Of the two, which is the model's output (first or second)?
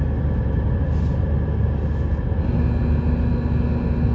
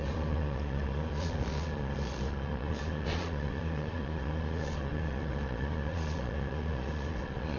second